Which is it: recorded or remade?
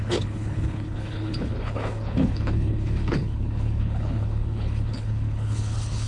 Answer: remade